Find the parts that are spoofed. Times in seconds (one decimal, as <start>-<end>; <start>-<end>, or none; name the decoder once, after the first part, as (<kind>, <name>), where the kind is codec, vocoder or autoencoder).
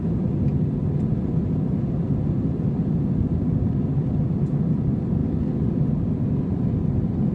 none